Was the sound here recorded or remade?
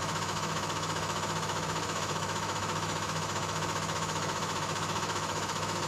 remade